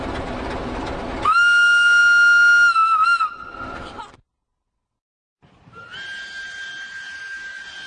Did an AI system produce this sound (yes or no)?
no